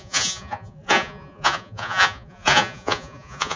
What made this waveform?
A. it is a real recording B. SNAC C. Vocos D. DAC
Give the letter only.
C